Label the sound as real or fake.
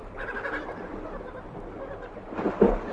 real